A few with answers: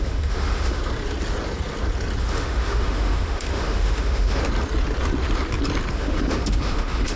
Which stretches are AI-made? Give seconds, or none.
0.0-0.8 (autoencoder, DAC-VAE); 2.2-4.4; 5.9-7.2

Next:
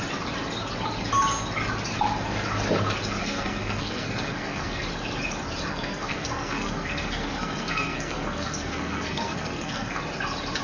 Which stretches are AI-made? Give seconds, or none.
3.2-4.8 (codec, SNAC); 5.7-10.0

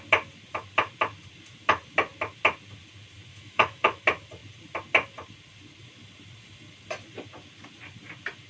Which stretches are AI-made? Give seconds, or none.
3.3-4.0 (autoencoder, DAC-VAE)

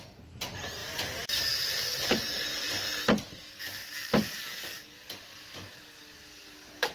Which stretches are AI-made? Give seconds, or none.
0.8-1.5 (vocoder, BigVGAN v2)

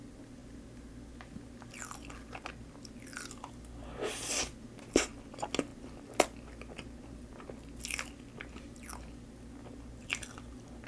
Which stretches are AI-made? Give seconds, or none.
none

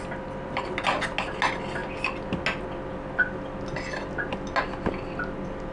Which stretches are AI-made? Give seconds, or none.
none

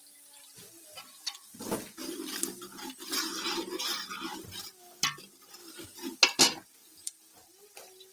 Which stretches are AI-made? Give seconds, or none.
none